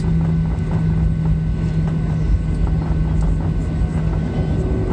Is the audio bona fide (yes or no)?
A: yes